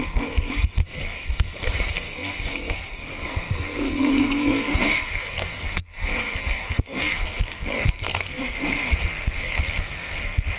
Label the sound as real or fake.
fake